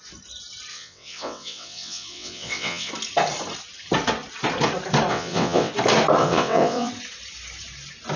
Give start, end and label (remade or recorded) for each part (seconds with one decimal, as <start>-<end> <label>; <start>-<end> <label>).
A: 0.0-0.7 recorded; 0.7-2.9 remade; 2.9-5.1 recorded; 5.1-5.7 remade; 5.7-6.2 recorded; 6.2-6.9 remade; 6.9-8.2 recorded